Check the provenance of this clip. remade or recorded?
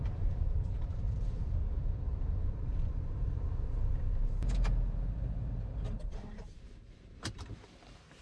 remade